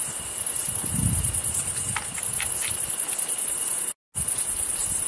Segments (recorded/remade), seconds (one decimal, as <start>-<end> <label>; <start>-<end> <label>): 0.0-5.1 recorded

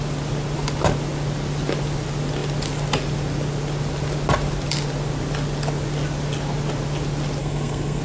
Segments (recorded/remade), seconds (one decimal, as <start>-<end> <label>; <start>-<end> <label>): 0.0-7.4 recorded; 7.4-8.0 remade

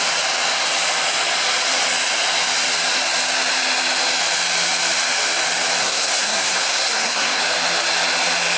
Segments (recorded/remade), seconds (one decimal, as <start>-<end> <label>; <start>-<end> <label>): 0.0-5.8 recorded; 5.8-7.4 remade; 7.4-8.6 recorded

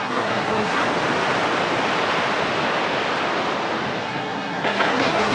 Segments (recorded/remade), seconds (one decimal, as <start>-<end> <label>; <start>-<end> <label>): 0.0-0.8 remade; 0.8-4.0 recorded; 4.0-5.3 remade